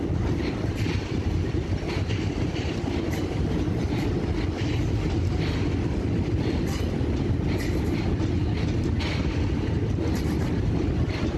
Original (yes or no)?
yes